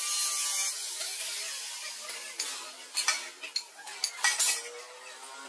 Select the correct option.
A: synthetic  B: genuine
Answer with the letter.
B